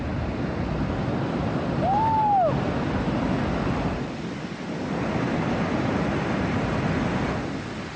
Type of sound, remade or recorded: recorded